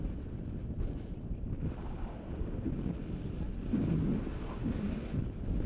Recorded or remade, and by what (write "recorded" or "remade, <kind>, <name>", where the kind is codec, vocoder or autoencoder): recorded